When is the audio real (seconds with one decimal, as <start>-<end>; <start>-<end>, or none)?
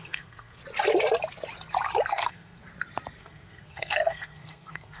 0.6-2.1; 2.6-3.2